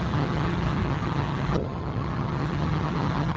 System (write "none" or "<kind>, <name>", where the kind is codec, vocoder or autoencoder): vocoder, HiFi-GAN